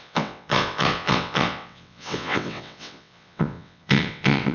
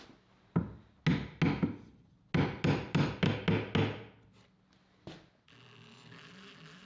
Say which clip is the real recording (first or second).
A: second